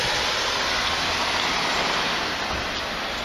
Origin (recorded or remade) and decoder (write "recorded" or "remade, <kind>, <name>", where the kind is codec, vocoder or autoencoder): recorded